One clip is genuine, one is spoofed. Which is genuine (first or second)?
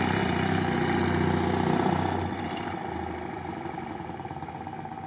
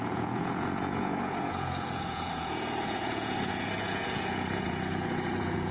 first